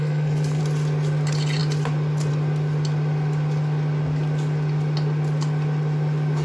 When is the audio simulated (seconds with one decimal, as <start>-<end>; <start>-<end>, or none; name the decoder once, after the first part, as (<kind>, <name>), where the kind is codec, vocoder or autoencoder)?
0.0-0.6 (codec, SNAC)